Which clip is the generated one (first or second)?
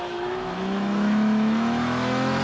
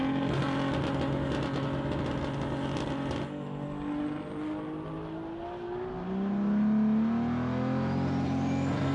first